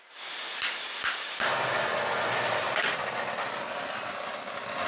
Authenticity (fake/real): real